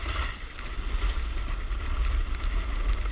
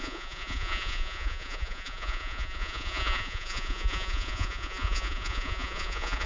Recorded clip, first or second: first